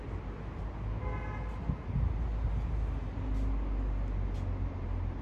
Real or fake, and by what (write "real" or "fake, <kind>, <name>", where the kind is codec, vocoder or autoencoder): real